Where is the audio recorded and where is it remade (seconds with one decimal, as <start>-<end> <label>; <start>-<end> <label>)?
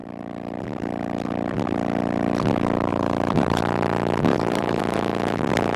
0.0-2.9 recorded; 2.9-3.6 remade; 3.6-4.3 recorded; 4.3-4.8 remade; 4.8-5.8 recorded